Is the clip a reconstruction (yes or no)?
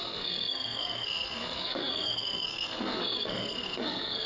yes